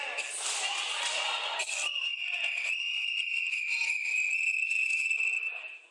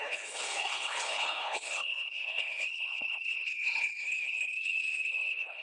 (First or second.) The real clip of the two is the first